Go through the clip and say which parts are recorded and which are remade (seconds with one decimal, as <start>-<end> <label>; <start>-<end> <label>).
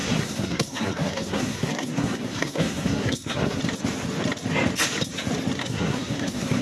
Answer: 0.0-3.6 remade; 3.6-5.6 recorded; 5.6-6.6 remade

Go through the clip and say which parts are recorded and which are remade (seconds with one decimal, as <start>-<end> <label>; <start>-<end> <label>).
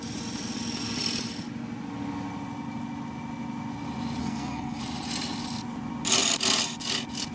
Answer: 0.0-4.2 recorded; 4.2-4.8 remade; 4.8-7.3 recorded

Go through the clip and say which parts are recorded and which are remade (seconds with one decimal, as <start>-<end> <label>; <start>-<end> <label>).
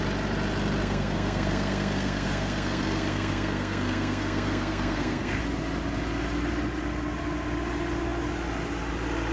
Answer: 0.0-0.8 recorded; 0.8-5.4 remade; 5.4-9.3 recorded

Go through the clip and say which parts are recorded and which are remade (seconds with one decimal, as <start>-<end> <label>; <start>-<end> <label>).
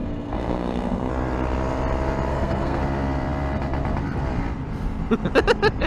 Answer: 0.0-1.1 remade; 1.1-2.3 recorded; 2.3-2.8 remade; 2.8-5.9 recorded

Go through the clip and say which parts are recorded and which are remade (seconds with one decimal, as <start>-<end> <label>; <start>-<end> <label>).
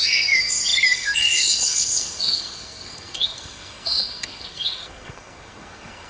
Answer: 0.0-6.1 remade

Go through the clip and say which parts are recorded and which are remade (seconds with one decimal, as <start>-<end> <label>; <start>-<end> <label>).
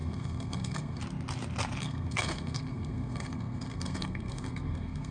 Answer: 0.0-1.0 remade; 1.0-1.8 recorded; 1.8-5.1 remade